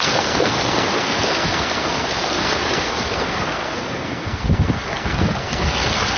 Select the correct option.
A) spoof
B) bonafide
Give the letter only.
A